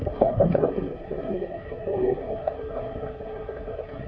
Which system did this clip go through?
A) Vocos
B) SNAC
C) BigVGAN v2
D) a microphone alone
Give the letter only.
B